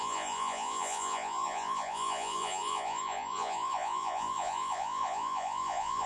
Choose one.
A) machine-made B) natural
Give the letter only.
A